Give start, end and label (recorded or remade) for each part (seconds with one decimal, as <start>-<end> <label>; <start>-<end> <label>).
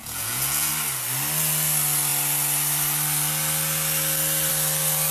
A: 0.0-0.7 remade; 0.7-5.1 recorded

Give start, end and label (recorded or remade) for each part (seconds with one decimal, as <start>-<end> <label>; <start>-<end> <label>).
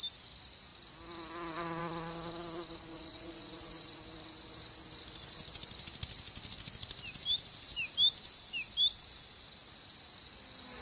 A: 0.0-2.9 recorded; 2.9-4.0 remade; 4.0-10.8 recorded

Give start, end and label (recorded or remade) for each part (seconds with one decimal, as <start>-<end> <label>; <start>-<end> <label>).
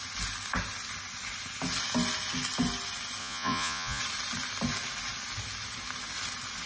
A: 0.0-3.2 recorded; 3.2-4.0 remade; 4.0-6.7 recorded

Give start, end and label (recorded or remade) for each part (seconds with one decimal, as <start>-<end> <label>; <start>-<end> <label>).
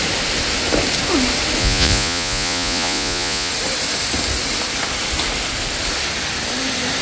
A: 0.0-1.6 recorded; 1.6-3.5 remade; 3.5-7.0 recorded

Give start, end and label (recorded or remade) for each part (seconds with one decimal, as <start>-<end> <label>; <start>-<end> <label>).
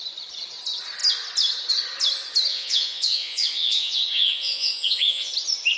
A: 0.0-2.5 recorded; 2.5-5.3 remade; 5.3-5.8 recorded